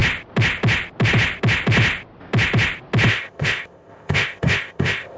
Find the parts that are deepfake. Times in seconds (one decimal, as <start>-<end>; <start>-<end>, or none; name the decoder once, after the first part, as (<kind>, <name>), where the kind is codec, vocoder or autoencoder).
3.1-5.2 (codec, ZipCodec)